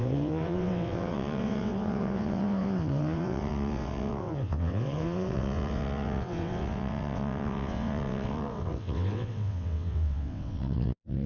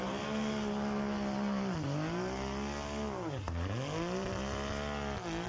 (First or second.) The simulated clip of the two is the first